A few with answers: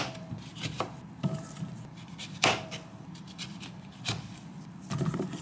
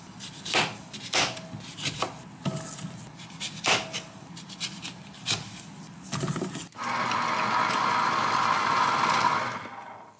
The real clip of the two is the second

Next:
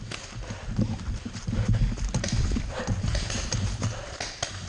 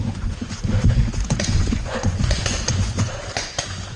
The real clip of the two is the first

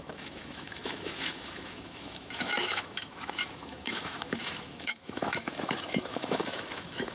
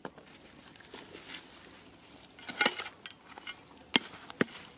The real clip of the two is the second